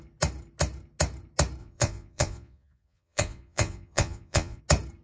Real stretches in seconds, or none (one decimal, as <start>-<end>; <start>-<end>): 0.0-1.6; 4.6-5.0